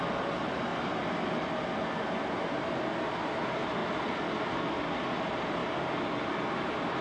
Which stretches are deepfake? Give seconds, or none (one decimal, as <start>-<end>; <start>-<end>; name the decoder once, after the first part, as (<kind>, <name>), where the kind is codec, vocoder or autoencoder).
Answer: none